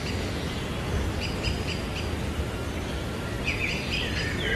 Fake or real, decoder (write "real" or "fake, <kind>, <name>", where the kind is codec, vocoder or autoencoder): real